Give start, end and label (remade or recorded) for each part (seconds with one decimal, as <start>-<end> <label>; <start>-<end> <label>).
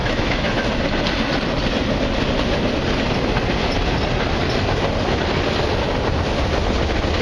0.0-0.7 remade; 0.7-7.2 recorded